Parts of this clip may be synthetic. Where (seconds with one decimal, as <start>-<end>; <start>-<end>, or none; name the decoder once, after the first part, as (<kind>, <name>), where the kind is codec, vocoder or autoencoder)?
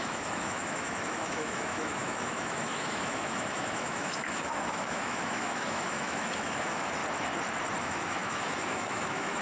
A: 0.0-7.0 (autoencoder, DAC-VAE); 7.8-9.4